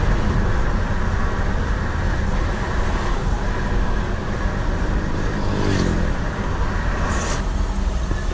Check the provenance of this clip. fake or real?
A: real